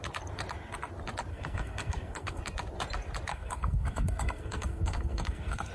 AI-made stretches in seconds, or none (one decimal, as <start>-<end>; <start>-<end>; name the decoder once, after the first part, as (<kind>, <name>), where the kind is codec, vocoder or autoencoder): 1.3-2.4 (codec, SNAC); 3.3-5.7